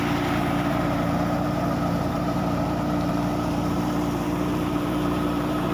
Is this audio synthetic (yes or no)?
yes